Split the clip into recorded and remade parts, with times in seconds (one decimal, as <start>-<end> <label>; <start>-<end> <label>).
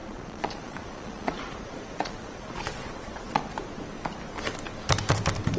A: 0.0-3.4 remade; 3.4-5.6 recorded